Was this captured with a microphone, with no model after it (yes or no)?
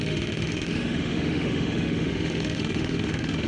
no